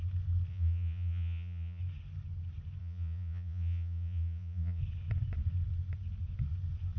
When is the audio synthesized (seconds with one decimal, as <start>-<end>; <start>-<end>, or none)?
0.5-1.8; 2.8-4.8